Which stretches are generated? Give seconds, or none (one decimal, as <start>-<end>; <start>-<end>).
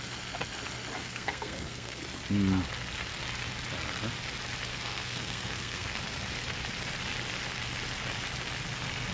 1.0-2.0; 4.7-6.0